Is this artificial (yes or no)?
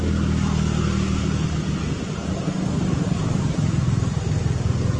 no